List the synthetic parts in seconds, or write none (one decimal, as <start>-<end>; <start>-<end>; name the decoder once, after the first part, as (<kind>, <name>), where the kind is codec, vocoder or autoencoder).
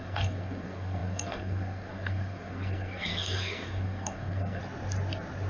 0.0-4.6 (codec, SNAC)